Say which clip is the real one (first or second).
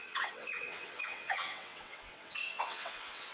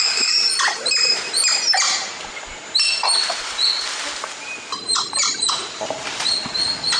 second